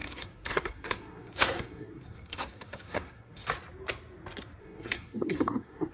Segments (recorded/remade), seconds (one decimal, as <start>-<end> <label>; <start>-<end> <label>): 0.0-3.4 remade; 3.4-4.6 recorded; 4.6-5.9 remade